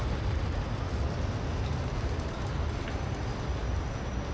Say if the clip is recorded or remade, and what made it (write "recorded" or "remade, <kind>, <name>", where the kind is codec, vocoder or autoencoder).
recorded